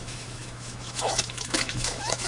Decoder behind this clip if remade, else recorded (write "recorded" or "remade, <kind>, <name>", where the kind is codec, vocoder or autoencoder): remade, autoencoder, DAC-VAE